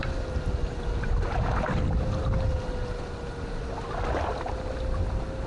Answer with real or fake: real